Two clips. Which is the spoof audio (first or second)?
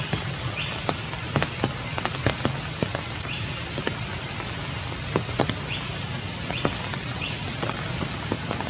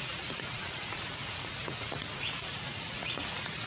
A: second